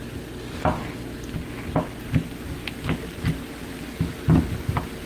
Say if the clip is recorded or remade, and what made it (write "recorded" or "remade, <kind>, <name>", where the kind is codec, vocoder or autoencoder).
recorded